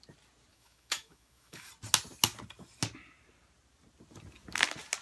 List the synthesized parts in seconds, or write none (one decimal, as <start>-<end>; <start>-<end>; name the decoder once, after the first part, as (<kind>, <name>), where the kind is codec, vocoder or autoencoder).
0.5-1.7 (autoencoder, DAC-VAE)